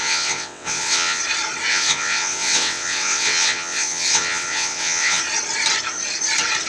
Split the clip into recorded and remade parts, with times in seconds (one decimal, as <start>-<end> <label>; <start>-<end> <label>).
0.0-1.2 remade; 1.2-1.7 recorded; 1.7-5.2 remade; 5.2-6.7 recorded